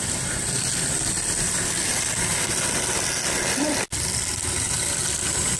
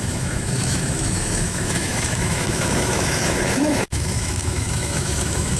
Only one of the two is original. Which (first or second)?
first